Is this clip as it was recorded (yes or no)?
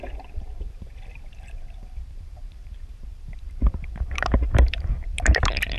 no